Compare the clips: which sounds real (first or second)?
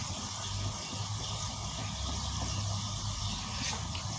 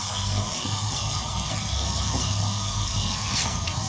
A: first